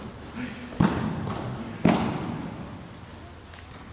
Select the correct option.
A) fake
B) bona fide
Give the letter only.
B